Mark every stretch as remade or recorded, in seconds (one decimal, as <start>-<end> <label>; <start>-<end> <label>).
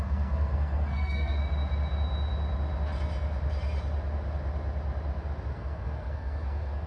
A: 0.0-1.4 remade; 1.4-5.5 recorded; 5.5-6.9 remade